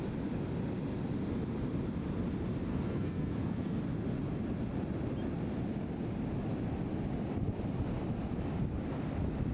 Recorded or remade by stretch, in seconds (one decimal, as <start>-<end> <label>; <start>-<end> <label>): 0.0-2.7 recorded; 2.7-3.8 remade; 3.8-9.5 recorded